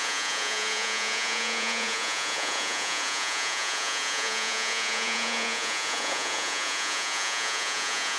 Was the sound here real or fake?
fake